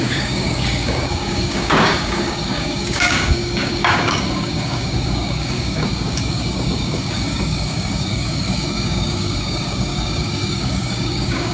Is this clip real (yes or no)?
no